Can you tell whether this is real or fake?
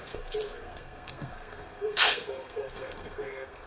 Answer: fake